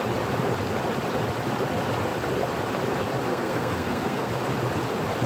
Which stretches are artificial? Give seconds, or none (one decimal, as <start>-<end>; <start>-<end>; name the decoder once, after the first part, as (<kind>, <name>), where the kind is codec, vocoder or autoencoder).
3.3-4.3 (codec, SNAC)